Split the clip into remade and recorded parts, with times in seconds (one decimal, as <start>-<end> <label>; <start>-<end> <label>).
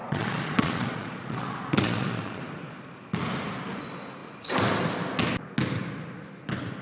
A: 0.0-2.4 remade; 2.4-6.8 recorded